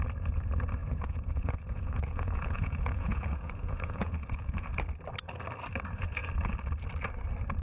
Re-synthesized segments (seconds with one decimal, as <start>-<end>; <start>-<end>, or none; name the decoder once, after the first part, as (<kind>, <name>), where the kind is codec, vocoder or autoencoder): 0.8-4.7 (vocoder, Vocos)